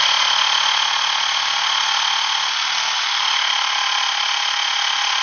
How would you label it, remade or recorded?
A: recorded